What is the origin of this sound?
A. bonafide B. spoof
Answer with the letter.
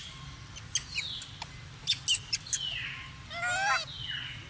A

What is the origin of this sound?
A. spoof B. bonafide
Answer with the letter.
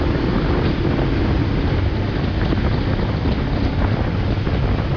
B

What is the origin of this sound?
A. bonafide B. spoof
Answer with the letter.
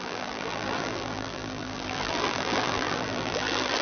B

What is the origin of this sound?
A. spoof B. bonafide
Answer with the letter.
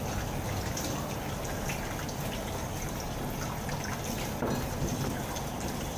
B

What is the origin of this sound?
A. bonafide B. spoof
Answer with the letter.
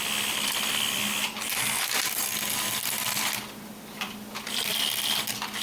A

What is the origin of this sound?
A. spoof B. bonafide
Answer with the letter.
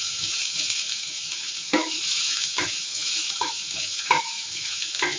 A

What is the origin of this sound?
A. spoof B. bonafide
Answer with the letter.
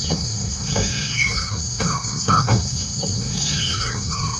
A